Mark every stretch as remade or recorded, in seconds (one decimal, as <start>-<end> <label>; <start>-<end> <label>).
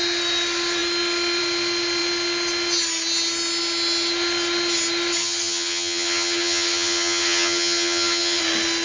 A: 0.0-5.2 recorded; 5.2-8.4 remade; 8.4-8.8 recorded